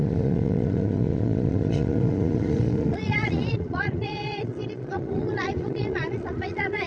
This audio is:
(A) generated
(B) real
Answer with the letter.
A